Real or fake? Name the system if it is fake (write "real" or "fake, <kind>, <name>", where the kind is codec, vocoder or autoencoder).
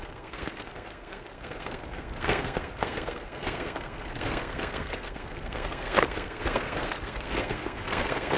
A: fake, codec, SNAC